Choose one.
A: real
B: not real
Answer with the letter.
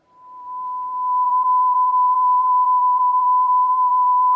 B